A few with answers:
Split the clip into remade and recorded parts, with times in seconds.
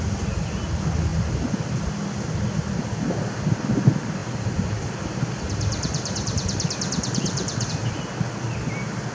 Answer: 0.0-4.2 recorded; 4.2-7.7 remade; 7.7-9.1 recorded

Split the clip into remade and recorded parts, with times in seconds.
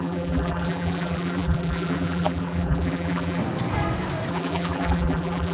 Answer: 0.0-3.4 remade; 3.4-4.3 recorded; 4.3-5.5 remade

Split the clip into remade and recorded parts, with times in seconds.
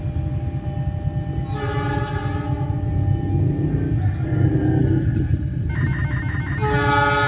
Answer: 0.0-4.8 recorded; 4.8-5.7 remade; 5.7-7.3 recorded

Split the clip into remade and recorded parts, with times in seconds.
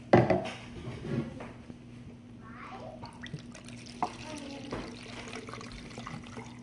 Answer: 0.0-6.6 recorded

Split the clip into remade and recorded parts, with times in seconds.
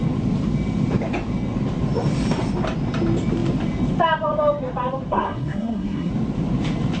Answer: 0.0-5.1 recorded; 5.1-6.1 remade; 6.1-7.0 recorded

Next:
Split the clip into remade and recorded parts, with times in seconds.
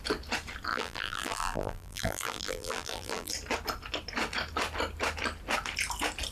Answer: 0.0-0.7 recorded; 0.7-3.3 remade; 3.3-6.3 recorded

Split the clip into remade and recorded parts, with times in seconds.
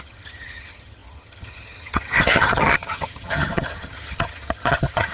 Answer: 0.0-5.1 remade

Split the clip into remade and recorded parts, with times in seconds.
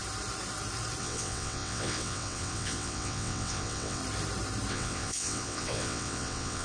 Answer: 0.0-1.0 recorded; 1.0-4.0 remade; 4.0-4.7 recorded; 4.7-6.6 remade